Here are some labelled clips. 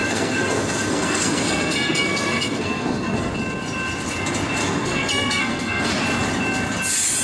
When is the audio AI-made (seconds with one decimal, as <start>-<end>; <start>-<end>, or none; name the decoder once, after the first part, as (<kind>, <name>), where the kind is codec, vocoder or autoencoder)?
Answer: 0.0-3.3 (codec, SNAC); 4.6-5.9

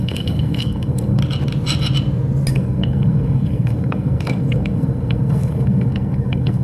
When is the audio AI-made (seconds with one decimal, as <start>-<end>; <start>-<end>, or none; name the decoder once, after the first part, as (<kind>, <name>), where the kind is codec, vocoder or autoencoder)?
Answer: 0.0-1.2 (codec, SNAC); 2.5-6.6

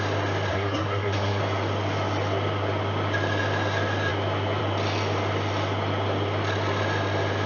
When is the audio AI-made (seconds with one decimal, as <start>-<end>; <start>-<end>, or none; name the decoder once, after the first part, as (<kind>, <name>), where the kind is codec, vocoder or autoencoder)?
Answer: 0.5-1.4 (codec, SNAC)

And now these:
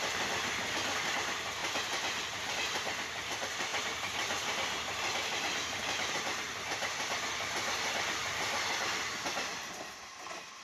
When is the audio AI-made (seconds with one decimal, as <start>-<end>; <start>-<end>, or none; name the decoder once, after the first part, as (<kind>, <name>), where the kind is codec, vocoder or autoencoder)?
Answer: none

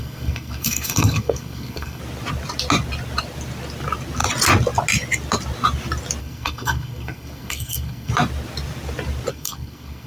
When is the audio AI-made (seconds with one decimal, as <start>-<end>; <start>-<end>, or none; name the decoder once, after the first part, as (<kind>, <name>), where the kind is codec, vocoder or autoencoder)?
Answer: 0.0-2.0 (codec, SNAC); 6.2-8.1; 9.3-10.1

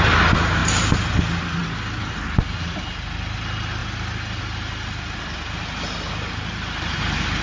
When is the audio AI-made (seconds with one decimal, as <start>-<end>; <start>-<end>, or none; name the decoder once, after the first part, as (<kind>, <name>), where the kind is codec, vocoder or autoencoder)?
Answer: none